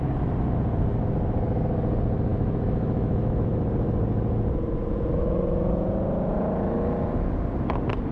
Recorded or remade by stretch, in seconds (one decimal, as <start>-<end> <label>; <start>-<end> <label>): 0.0-2.3 recorded; 2.3-3.7 remade; 3.7-8.1 recorded